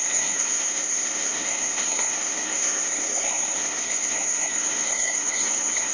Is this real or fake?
fake